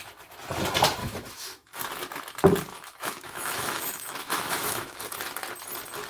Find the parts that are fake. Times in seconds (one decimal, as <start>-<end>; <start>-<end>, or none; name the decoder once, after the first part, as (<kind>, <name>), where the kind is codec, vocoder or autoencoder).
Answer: 1.0-1.8 (autoencoder, DAC-VAE); 2.7-5.0

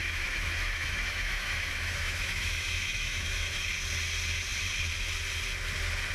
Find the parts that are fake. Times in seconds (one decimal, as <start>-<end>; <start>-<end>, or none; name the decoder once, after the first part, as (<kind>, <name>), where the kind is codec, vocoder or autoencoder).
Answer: 0.0-3.7 (autoencoder, DAC-VAE)